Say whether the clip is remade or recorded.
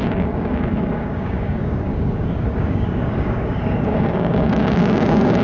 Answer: remade